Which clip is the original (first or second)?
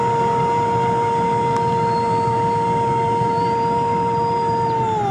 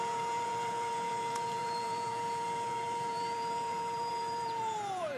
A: first